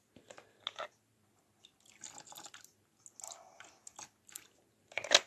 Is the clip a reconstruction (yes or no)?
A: no